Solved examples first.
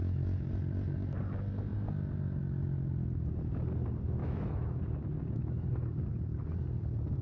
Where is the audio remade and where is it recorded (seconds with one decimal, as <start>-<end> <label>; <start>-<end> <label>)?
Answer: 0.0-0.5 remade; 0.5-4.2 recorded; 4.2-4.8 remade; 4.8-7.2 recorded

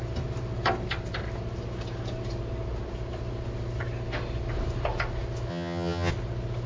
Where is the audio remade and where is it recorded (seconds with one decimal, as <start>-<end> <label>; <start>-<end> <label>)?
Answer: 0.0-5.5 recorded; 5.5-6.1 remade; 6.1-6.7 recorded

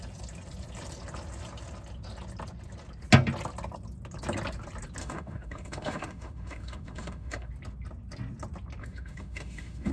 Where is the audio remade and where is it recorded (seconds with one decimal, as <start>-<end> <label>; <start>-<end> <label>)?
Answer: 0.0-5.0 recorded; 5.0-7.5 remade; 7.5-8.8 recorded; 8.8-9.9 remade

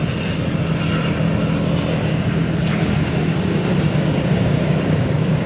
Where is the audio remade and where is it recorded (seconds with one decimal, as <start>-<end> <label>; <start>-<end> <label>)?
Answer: 0.0-2.1 recorded; 2.1-5.5 remade

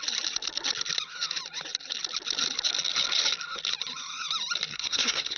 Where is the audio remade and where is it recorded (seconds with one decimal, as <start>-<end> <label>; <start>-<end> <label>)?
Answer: 0.0-4.7 recorded; 4.7-5.4 remade

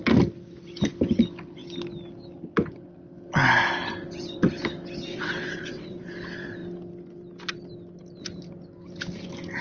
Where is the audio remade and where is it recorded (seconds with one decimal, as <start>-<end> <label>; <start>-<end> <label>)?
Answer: 0.0-5.1 recorded; 5.1-6.0 remade; 6.0-9.6 recorded